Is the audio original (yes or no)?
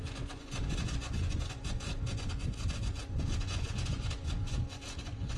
no